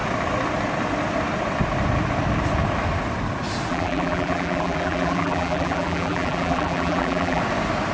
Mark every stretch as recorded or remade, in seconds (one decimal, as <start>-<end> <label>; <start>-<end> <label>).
0.0-3.7 recorded; 3.7-7.4 remade; 7.4-7.9 recorded